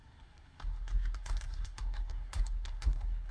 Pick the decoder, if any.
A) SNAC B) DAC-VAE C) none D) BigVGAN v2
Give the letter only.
A